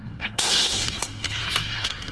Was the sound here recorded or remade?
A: remade